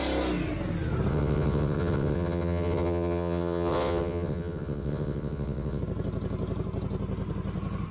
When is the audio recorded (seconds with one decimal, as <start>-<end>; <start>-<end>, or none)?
0.0-1.1; 5.8-7.9